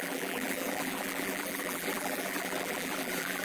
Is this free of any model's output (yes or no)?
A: no